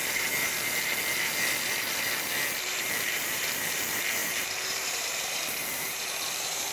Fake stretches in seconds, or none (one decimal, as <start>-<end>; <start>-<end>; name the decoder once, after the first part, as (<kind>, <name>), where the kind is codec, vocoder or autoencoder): 2.6-6.7 (vocoder, BigVGAN v2)